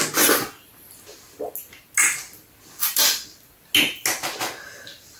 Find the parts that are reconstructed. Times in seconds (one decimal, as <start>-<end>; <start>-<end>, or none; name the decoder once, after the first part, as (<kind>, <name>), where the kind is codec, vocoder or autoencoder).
none